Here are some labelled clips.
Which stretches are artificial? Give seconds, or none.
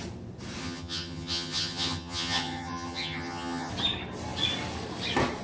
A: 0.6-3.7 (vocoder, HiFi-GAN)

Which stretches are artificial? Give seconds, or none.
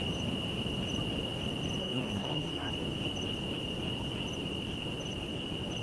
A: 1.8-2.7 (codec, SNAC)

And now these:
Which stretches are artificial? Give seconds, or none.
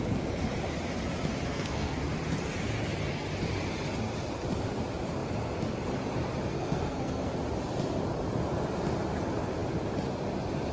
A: 1.5-2.0 (codec, SNAC); 6.5-7.3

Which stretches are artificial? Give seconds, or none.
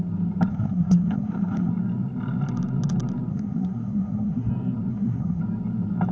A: 0.5-1.7 (codec, SNAC); 3.3-4.5; 4.9-5.4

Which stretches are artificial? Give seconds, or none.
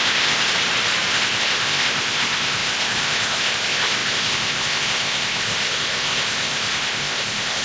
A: 0.0-0.5 (codec, ZipCodec); 1.1-7.6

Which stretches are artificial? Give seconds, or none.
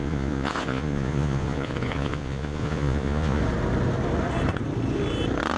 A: 0.0-3.4 (vocoder, Vocos)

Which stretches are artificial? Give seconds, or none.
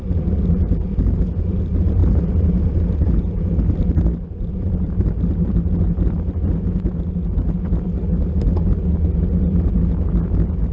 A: 2.0-5.7 (vocoder, BigVGAN v2)